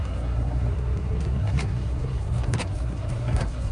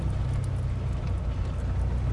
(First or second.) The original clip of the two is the second